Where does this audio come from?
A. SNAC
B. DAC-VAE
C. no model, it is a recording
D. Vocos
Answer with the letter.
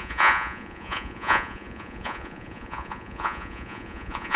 D